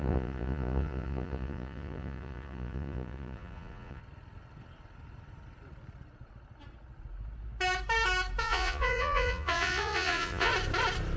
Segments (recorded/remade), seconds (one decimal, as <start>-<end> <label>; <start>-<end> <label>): 0.0-4.0 remade; 4.0-8.4 recorded; 8.4-10.5 remade; 10.5-11.2 recorded